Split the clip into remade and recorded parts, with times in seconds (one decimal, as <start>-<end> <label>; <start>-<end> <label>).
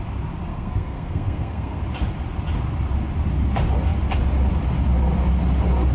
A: 0.0-0.5 recorded; 0.5-1.8 remade; 1.8-5.9 recorded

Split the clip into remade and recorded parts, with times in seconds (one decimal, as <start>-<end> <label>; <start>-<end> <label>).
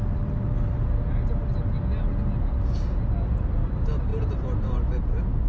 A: 0.0-5.5 recorded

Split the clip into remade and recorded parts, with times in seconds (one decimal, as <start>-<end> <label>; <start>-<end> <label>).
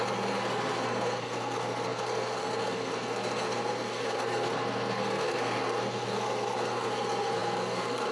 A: 0.0-8.1 remade